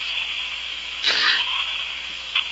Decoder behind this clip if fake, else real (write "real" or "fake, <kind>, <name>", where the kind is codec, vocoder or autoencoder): fake, autoencoder, DAC-VAE